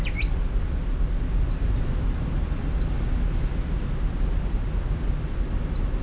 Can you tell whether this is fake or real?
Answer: real